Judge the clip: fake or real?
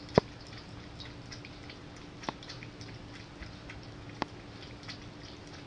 real